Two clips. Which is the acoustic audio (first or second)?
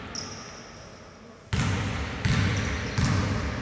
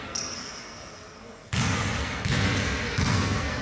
first